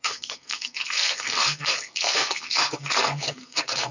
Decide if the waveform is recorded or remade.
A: remade